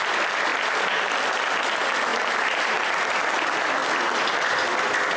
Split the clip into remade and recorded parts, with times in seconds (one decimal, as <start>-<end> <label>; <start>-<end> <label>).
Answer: 0.0-5.2 recorded